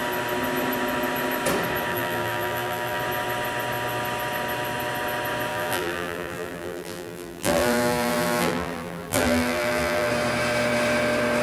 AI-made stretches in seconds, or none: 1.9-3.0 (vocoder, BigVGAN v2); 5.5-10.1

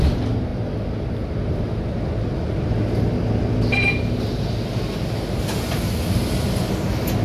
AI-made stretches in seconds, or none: none

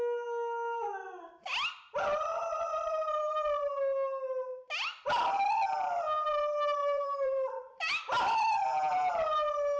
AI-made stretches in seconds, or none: 2.7-3.3 (vocoder, BigVGAN v2); 6.8-7.9